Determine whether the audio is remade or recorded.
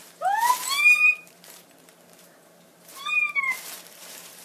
remade